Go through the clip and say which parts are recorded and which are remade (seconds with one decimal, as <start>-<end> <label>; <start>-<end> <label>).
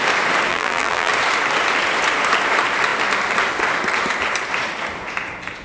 0.0-0.5 recorded; 0.5-1.1 remade; 1.1-5.6 recorded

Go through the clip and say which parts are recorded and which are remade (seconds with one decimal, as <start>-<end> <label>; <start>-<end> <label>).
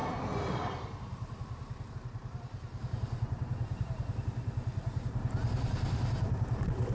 0.0-6.9 recorded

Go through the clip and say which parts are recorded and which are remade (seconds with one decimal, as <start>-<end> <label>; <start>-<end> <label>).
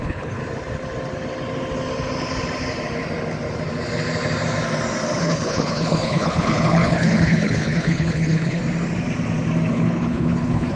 0.0-0.4 remade; 0.4-5.2 recorded; 5.2-8.6 remade; 8.6-9.7 recorded; 9.7-10.8 remade